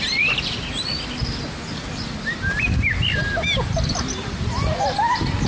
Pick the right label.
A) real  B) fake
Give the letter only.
A